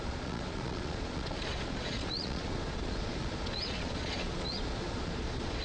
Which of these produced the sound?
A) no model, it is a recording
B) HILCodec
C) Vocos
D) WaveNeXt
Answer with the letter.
C